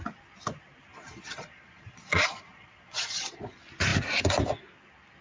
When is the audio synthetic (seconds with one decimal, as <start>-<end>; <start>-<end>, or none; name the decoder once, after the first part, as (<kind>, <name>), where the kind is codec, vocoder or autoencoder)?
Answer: 0.9-3.5 (vocoder, Vocos)